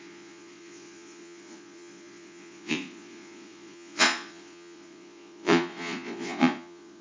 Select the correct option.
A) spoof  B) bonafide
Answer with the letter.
A